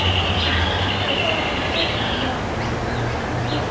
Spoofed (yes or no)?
no